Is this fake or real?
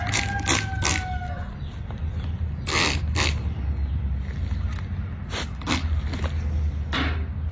real